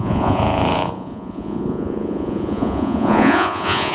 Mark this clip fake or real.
fake